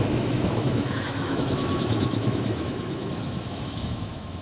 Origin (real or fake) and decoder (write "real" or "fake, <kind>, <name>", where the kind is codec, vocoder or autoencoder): fake, autoencoder, DAC-VAE